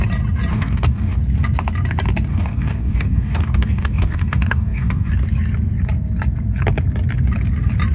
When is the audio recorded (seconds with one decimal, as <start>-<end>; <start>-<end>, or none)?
0.0-0.5; 1.2-2.3; 5.1-7.9